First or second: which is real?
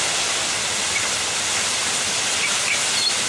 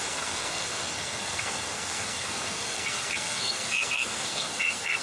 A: first